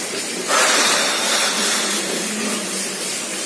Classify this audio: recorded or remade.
remade